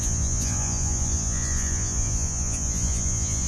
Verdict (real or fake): fake